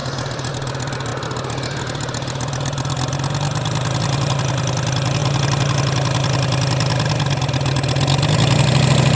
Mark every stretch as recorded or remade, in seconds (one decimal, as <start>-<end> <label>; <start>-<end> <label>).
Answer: 0.0-9.2 recorded